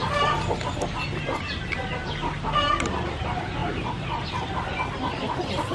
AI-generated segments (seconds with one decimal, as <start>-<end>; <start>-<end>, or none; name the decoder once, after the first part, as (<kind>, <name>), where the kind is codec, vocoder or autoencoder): none